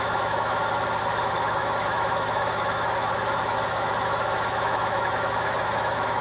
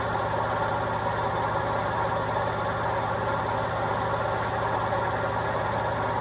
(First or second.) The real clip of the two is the second